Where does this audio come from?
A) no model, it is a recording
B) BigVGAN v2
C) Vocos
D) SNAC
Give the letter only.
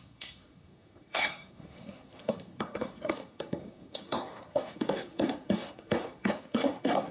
D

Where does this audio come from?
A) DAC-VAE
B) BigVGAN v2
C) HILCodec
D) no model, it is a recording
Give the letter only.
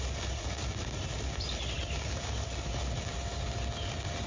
D